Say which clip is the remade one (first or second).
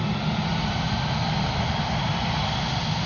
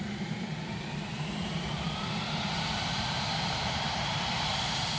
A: second